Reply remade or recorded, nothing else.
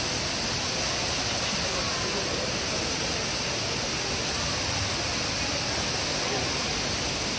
recorded